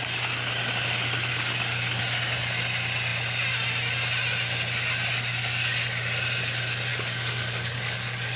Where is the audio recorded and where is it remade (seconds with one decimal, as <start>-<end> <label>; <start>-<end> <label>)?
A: 0.0-1.3 recorded; 1.3-2.0 remade; 2.0-6.9 recorded; 6.9-8.4 remade